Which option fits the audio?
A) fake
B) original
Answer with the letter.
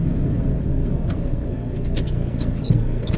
A